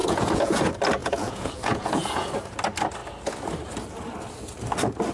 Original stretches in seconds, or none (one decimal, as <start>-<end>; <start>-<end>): 0.6-1.0; 2.3-5.1